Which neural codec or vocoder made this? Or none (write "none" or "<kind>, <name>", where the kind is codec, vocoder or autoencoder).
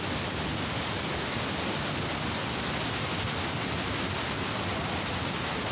none